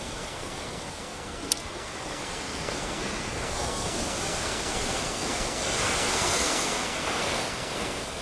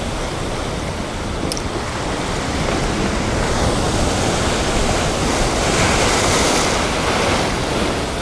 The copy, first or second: first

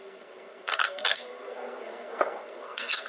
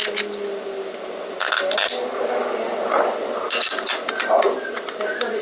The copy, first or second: first